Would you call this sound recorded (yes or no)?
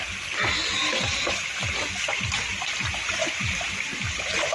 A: yes